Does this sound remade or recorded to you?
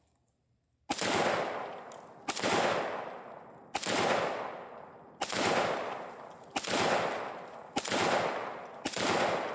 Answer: recorded